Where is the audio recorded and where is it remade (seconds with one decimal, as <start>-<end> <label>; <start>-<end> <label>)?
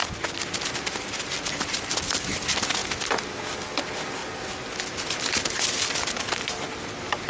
0.0-7.3 recorded